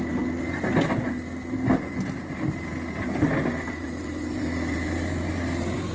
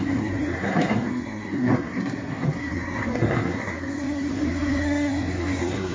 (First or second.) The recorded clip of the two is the first